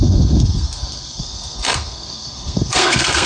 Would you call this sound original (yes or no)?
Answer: no